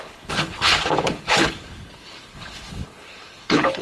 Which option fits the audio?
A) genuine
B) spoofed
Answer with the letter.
B